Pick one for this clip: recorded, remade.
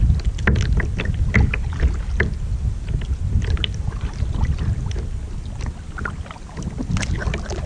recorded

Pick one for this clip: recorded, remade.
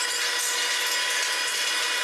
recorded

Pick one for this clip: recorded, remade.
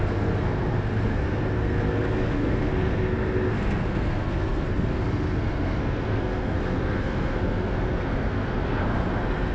remade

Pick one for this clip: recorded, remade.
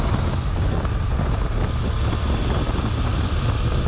recorded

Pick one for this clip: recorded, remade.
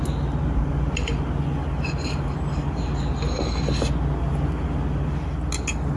recorded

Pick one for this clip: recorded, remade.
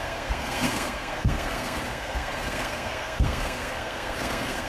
remade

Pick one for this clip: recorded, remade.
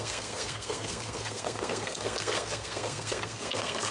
remade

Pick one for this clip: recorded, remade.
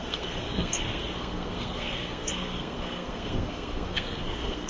remade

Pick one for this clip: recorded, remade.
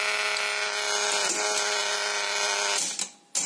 recorded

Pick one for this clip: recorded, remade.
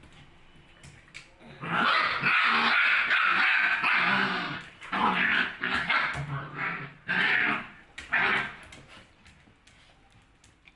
recorded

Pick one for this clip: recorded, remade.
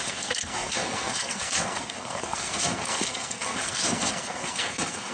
remade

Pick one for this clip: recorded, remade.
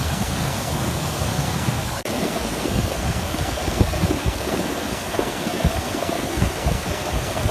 remade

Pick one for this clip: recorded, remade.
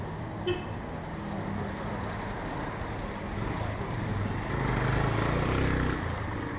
recorded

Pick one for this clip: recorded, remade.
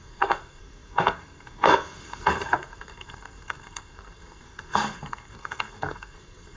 remade